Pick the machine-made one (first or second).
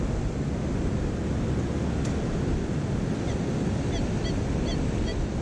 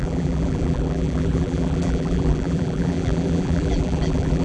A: second